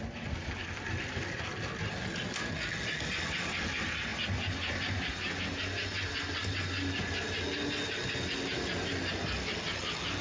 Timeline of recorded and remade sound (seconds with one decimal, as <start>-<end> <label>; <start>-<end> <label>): 0.0-10.2 recorded